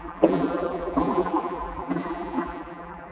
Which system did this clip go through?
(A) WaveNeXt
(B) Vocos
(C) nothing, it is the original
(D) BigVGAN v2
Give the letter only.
D